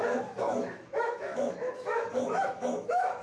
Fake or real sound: fake